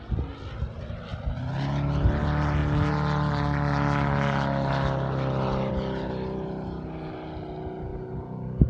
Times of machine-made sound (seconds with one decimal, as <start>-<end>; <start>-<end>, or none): none